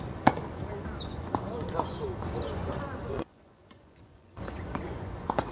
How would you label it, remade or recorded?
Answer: remade